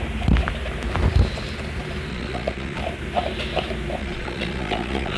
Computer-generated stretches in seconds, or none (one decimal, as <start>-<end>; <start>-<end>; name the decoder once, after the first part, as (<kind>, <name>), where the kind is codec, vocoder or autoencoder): 2.1-2.8 (vocoder, Vocos); 4.0-5.2